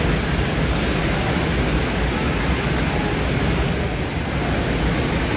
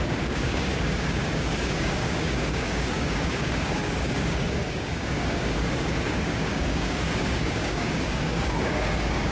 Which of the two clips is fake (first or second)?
second